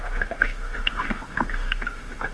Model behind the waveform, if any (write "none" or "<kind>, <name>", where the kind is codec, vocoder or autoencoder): autoencoder, DAC-VAE